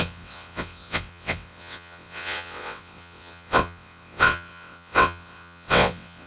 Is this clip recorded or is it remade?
remade